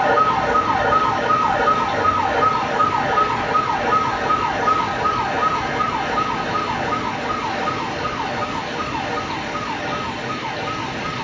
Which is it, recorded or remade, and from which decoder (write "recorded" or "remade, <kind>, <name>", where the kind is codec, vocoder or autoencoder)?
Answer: recorded